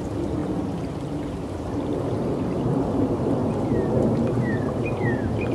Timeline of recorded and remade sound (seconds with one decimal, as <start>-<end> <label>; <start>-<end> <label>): 0.0-0.4 remade; 0.4-1.3 recorded; 1.3-1.9 remade; 1.9-2.7 recorded; 2.7-3.4 remade; 3.4-4.3 recorded; 4.3-5.5 remade